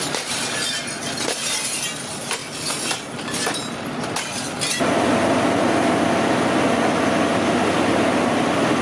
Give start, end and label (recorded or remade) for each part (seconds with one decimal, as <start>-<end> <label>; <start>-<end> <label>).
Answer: 0.0-8.8 recorded